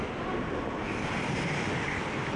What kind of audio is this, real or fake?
real